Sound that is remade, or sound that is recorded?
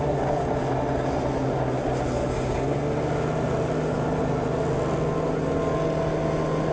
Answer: recorded